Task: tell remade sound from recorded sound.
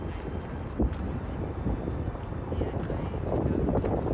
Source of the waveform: recorded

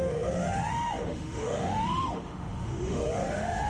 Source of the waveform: remade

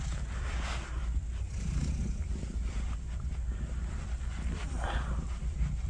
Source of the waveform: recorded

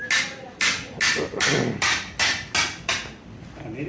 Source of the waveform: recorded